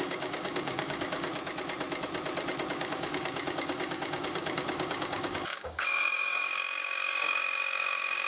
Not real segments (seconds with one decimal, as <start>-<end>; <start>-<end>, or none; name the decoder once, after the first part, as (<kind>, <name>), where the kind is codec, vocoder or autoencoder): 0.0-1.3 (codec, DAC); 2.7-8.3